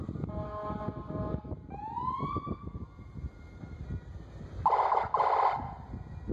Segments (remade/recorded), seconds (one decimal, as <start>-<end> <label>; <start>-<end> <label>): 0.0-6.3 recorded